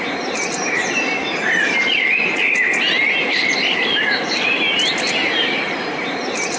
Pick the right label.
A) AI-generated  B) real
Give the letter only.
B